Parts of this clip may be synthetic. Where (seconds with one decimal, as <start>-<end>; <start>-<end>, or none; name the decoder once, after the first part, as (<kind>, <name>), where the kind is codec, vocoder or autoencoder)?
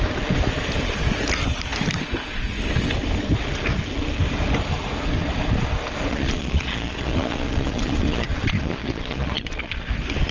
6.1-9.9 (vocoder, Vocos)